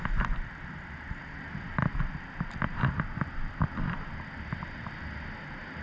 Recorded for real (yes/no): yes